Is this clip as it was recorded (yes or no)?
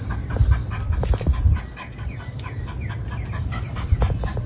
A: yes